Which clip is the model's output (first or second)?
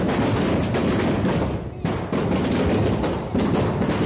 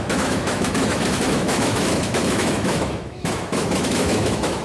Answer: second